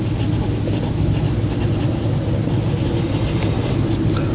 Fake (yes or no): no